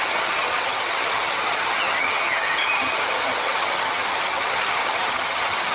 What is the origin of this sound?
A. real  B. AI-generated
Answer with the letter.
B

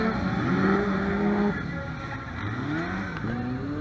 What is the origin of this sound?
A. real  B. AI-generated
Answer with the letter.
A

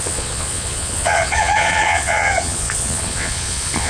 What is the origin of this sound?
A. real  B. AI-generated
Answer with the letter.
B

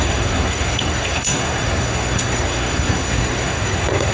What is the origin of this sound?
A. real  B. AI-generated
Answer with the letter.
B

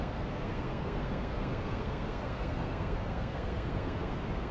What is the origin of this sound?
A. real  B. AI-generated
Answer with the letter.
B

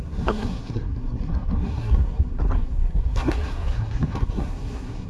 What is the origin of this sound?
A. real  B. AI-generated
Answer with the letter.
B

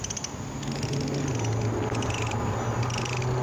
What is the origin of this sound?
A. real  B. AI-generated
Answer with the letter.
A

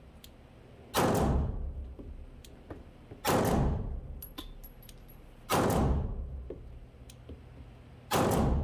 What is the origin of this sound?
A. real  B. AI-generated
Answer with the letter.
A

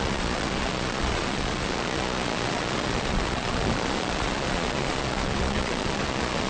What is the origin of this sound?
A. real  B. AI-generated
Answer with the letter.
B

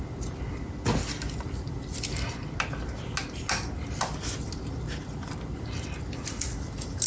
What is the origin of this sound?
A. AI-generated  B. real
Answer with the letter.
B